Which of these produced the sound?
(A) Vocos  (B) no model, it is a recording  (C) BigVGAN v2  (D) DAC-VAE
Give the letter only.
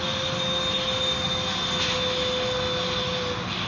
B